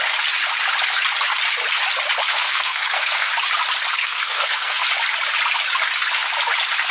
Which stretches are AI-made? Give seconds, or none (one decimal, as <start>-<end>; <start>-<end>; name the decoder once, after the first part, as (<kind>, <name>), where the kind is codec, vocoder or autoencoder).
2.3-3.3 (codec, SNAC); 4.0-4.8